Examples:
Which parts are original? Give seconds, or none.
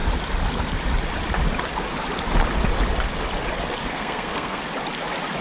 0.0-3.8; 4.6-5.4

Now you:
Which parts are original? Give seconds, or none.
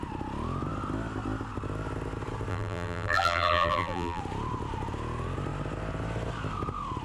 0.0-2.5; 4.2-7.0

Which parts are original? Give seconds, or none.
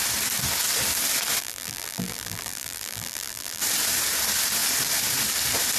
0.0-1.4; 3.6-5.8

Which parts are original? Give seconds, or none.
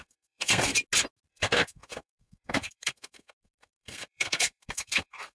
0.7-1.3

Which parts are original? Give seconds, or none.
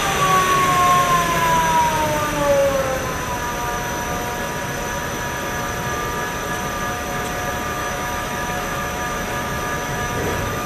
0.0-7.8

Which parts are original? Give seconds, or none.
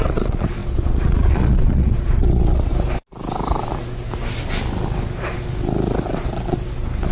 2.7-7.1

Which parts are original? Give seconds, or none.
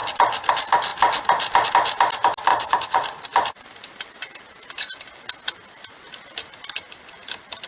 0.0-2.5; 3.2-7.7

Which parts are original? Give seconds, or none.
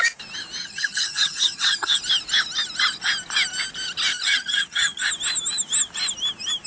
0.0-0.6; 2.0-4.1; 5.1-6.7